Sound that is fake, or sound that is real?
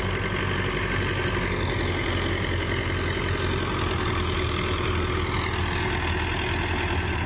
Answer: real